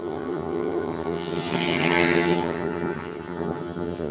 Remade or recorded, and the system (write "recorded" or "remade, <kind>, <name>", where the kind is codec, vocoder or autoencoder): remade, vocoder, HiFi-GAN